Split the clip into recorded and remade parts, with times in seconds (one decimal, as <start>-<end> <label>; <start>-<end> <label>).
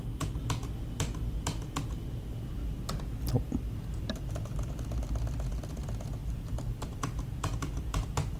0.0-6.2 recorded; 6.2-8.4 remade